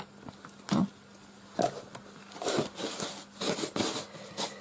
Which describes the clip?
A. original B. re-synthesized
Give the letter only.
A